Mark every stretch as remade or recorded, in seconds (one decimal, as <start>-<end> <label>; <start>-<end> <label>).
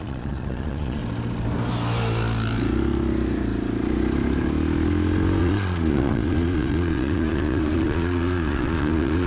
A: 0.0-1.0 remade; 1.0-5.4 recorded; 5.4-9.3 remade